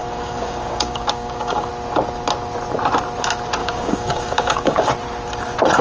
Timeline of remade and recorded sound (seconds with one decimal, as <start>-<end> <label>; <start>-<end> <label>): 0.0-1.7 remade; 1.7-3.6 recorded; 3.6-4.9 remade; 4.9-5.8 recorded

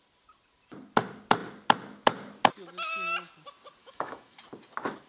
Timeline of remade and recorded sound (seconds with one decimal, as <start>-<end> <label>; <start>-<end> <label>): 0.0-3.8 recorded; 3.8-4.4 remade; 4.4-5.1 recorded

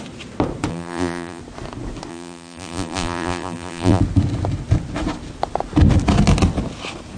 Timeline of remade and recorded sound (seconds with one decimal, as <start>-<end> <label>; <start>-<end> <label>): 0.0-0.7 recorded; 0.7-1.4 remade; 1.4-2.1 recorded; 2.1-4.0 remade; 4.0-7.2 recorded